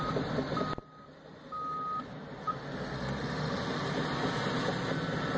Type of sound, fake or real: real